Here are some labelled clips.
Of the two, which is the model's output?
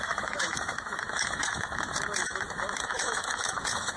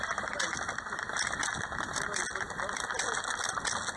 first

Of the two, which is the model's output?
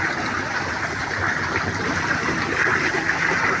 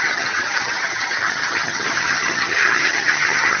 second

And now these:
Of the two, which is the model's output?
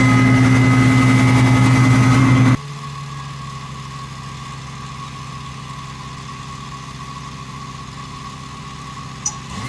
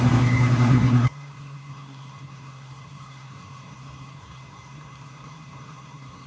second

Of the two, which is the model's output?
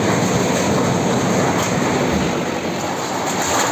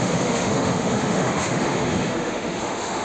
second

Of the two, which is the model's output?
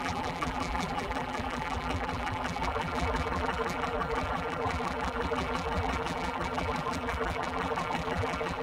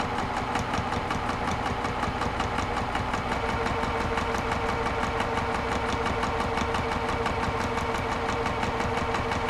first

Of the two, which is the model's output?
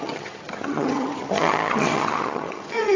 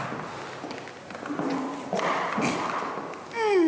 first